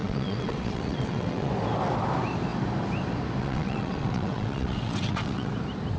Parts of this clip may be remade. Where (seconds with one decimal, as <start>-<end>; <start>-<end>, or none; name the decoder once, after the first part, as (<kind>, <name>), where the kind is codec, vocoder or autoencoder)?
0.0-1.5 (vocoder, WaveNeXt); 3.4-5.5